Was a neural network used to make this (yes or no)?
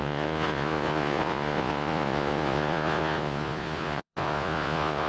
yes